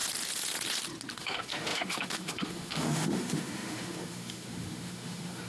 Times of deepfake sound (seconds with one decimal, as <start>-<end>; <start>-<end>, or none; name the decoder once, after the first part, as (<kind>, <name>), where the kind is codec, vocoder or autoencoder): 1.1-5.5 (autoencoder, DAC-VAE)